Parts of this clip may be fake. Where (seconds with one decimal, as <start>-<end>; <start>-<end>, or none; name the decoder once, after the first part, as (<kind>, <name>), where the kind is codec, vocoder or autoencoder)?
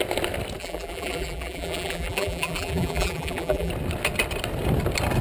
0.6-3.7 (vocoder, BigVGAN v2)